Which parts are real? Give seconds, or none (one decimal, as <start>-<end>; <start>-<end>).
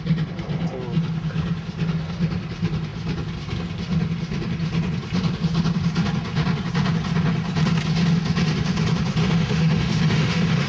0.0-9.2